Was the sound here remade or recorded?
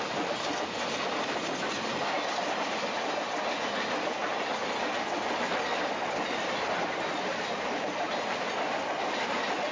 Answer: recorded